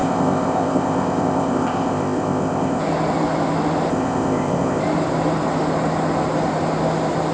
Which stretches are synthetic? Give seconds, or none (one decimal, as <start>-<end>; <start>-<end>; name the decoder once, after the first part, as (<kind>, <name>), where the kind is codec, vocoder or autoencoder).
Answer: 0.0-2.8 (codec, ZipCodec); 3.9-4.8